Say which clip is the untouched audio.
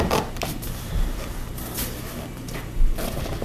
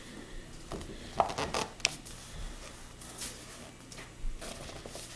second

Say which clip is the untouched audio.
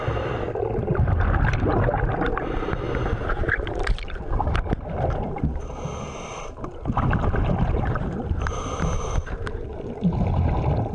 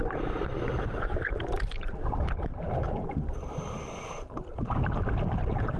first